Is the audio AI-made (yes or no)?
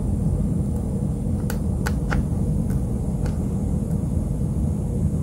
yes